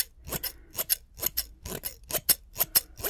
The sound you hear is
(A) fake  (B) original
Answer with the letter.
B